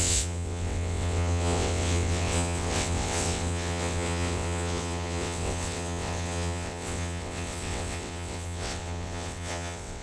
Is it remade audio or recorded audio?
remade